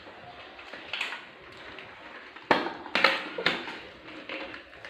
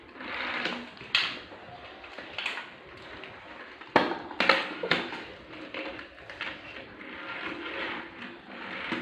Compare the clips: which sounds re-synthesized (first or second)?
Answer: second